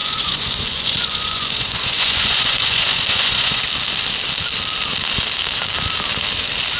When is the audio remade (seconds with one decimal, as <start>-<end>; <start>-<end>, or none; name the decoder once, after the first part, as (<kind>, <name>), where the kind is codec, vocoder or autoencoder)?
0.0-3.6 (vocoder, Vocos)